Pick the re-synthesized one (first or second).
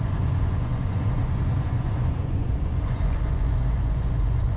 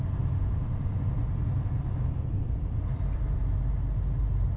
first